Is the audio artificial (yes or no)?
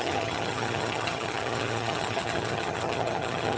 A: yes